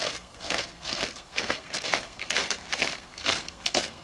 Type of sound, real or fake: fake